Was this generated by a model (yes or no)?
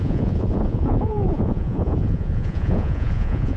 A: yes